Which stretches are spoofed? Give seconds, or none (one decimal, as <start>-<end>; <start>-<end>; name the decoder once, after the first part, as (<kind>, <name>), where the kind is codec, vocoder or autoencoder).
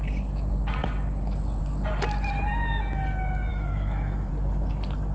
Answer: 3.5-4.3 (autoencoder, DAC-VAE)